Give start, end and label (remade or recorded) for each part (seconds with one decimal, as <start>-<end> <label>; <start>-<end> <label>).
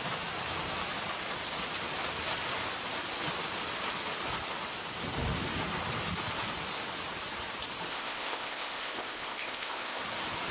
0.0-7.9 recorded; 7.9-10.0 remade; 10.0-10.5 recorded